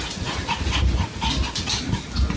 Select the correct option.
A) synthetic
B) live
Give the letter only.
B